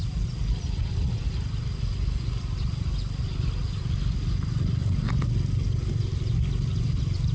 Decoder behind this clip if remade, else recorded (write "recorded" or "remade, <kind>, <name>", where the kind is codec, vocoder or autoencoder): recorded